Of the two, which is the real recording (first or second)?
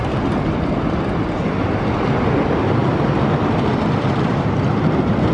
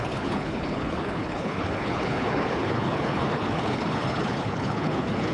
first